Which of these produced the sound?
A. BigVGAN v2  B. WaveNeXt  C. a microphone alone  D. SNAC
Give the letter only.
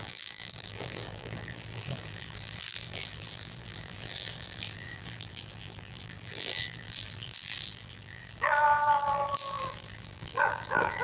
A